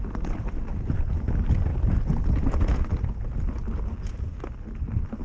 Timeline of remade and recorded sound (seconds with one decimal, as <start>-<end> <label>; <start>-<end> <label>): 0.0-5.2 recorded